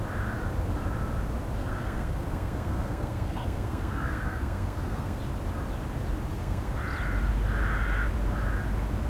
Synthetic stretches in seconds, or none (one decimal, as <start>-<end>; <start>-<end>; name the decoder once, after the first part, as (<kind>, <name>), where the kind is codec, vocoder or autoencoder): 1.6-5.2 (codec, SNAC); 6.3-6.8